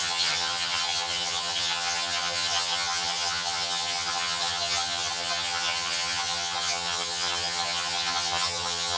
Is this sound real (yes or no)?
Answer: no